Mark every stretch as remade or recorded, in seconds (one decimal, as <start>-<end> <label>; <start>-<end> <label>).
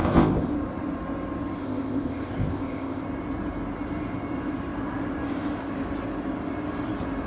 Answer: 0.0-0.5 remade; 0.5-1.6 recorded; 1.6-3.0 remade; 3.0-7.3 recorded